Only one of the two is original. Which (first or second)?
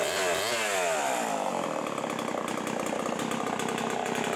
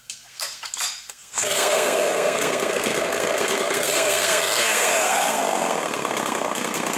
first